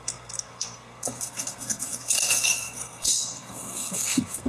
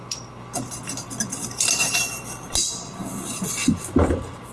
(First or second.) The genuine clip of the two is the second